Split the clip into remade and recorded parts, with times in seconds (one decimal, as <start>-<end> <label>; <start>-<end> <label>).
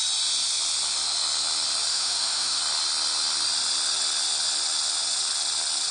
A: 0.0-1.9 recorded; 1.9-2.6 remade; 2.6-5.9 recorded